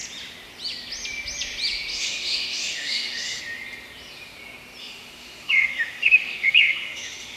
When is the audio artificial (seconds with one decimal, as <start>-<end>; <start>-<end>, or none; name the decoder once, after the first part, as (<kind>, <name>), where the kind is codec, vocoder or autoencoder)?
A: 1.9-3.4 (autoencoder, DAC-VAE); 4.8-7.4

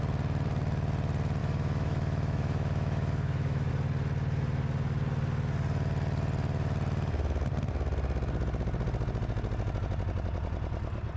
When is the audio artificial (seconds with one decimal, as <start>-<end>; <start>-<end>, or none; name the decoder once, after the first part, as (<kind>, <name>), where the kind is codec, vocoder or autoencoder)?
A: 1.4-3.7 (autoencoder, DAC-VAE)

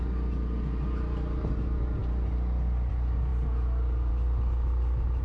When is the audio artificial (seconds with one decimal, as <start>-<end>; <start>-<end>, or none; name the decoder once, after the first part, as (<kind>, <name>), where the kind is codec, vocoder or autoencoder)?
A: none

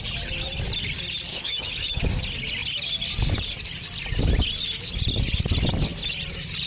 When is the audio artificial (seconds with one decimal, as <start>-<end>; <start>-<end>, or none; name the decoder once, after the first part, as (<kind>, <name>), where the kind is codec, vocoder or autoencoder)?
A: 1.3-2.1 (autoencoder, DAC-VAE)